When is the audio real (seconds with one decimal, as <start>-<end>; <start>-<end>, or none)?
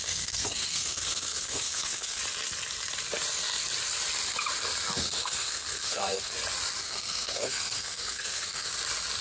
2.2-5.0; 6.3-6.8; 8.7-9.2